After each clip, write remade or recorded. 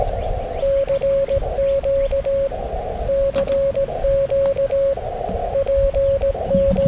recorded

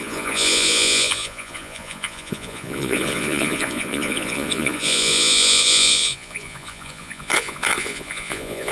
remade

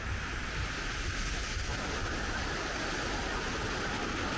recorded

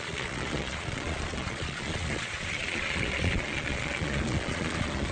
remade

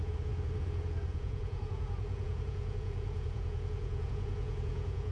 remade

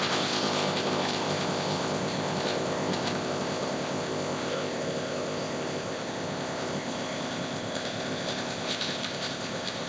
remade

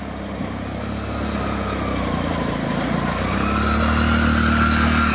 recorded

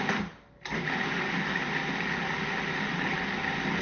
recorded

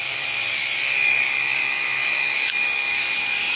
remade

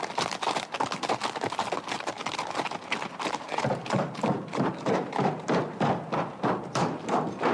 recorded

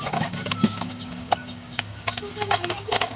remade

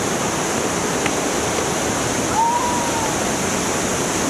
recorded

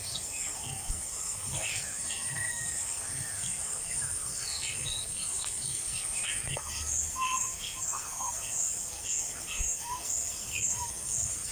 remade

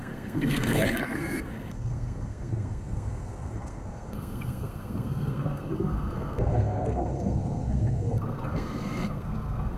remade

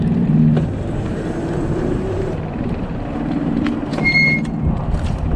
remade